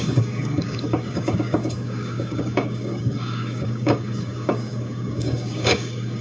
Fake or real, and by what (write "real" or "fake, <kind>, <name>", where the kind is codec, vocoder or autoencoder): fake, codec, DAC